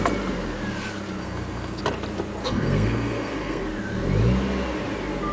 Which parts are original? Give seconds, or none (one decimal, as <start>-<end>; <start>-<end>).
0.0-1.2; 1.8-2.4; 3.6-5.3